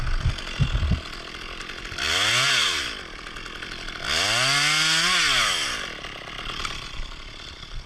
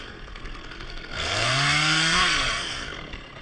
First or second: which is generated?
second